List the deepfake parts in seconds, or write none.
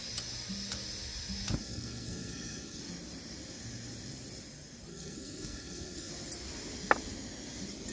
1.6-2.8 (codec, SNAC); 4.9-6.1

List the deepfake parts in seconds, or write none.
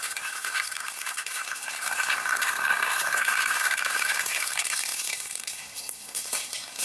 0.0-6.8 (codec, SNAC)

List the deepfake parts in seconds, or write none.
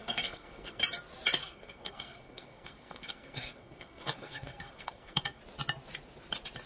0.0-0.8 (codec, SNAC); 1.4-5.4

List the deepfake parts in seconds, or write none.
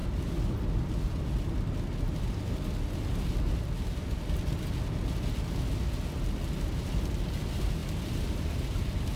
none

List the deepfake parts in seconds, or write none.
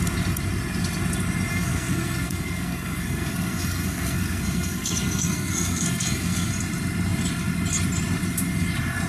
1.5-6.5 (codec, SNAC)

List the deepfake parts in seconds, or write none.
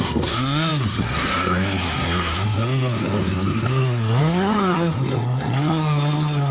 0.0-6.5 (codec, SNAC)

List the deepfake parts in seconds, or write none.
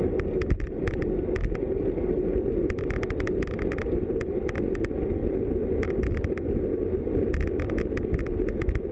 none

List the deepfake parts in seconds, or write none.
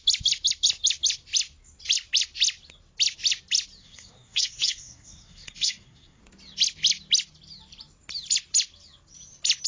3.8-6.2 (codec, SNAC)